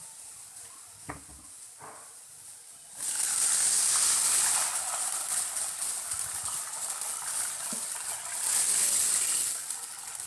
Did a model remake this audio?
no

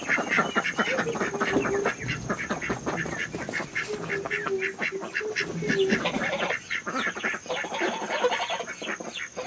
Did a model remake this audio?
no